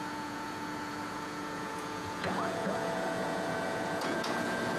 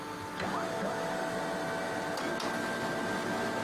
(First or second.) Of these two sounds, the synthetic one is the first